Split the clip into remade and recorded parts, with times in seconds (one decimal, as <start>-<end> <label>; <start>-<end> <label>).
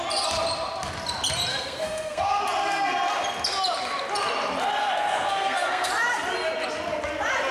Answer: 0.0-1.5 recorded; 1.5-2.4 remade; 2.4-4.8 recorded; 4.8-5.9 remade; 5.9-7.5 recorded